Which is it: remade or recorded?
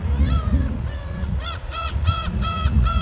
remade